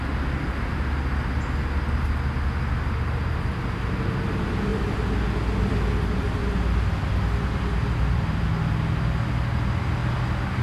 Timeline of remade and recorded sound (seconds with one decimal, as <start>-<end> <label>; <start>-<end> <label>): 0.0-10.6 recorded